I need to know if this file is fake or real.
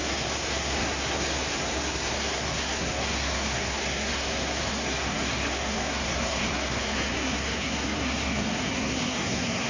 fake